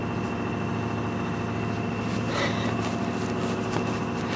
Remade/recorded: recorded